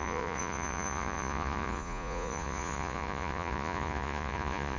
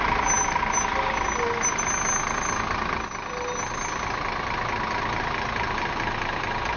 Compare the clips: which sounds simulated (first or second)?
first